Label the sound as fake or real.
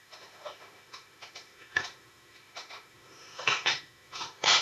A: fake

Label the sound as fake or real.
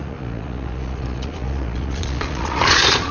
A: fake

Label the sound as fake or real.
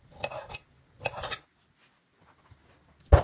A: real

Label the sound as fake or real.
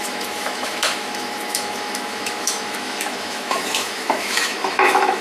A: fake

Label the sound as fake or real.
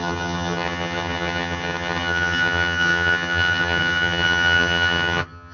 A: fake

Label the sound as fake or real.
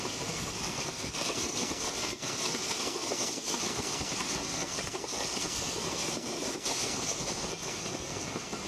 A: fake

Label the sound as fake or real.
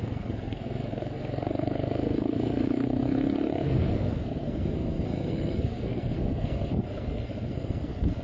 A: fake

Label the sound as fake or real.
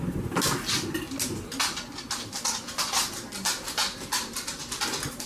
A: real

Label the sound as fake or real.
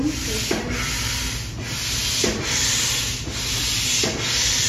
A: real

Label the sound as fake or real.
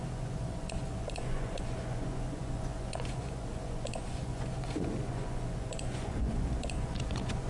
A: fake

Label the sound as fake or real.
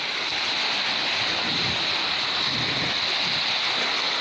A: real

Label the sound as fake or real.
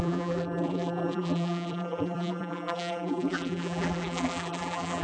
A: fake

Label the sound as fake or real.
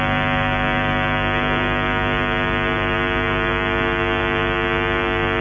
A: real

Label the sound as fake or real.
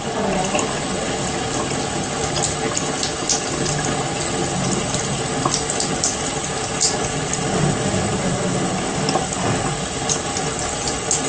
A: real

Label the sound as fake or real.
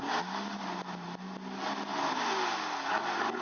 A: real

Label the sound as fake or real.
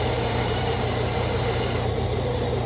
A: fake